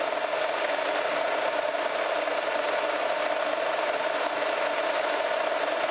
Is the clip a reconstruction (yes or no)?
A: no